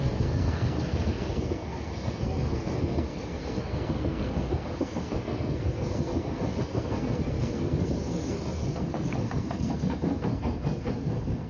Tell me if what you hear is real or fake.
fake